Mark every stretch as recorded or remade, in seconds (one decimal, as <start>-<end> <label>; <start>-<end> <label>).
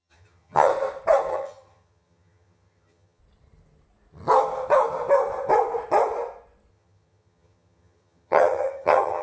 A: 0.0-0.7 remade; 0.7-1.3 recorded; 1.3-3.2 remade; 3.2-6.7 recorded; 6.7-9.2 remade